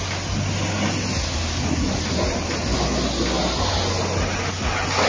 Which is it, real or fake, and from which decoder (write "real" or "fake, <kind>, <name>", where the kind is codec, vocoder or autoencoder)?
real